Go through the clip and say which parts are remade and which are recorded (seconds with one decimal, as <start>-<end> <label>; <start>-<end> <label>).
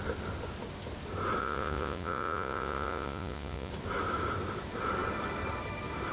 0.0-1.4 recorded; 1.4-3.7 remade; 3.7-6.1 recorded